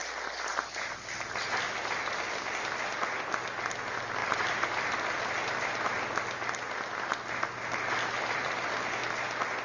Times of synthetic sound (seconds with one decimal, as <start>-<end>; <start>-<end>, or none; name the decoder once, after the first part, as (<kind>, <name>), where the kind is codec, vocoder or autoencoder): 4.2-5.3 (vocoder, BigVGAN v2)